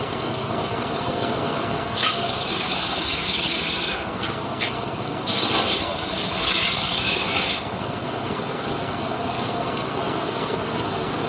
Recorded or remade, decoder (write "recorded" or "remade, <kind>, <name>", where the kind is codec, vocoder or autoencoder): remade, codec, SNAC